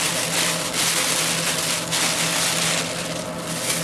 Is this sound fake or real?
real